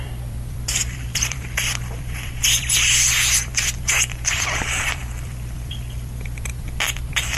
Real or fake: fake